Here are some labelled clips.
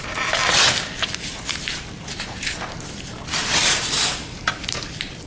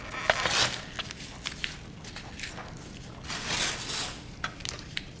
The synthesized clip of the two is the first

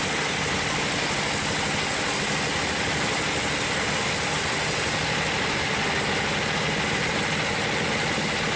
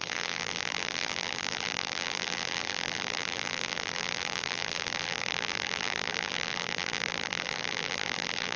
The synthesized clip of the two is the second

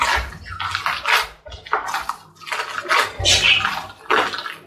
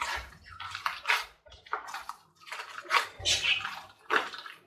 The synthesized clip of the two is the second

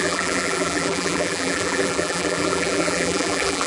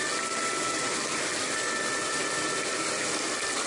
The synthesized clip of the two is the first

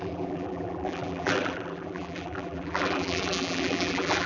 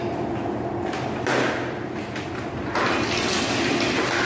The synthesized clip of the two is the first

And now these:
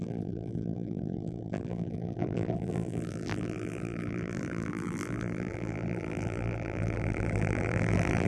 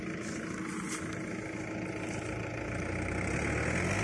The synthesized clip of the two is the first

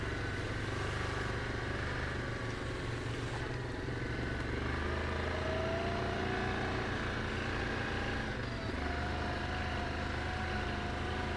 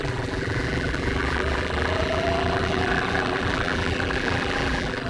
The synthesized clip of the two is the second